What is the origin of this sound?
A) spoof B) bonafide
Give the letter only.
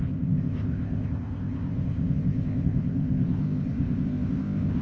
A